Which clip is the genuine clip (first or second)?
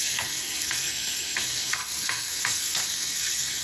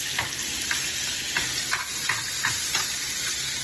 second